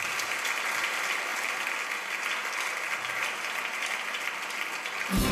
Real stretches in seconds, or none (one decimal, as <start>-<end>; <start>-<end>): 0.0-5.3